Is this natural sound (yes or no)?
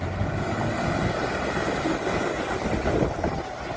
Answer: yes